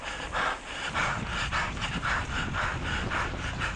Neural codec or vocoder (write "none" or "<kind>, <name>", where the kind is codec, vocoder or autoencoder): none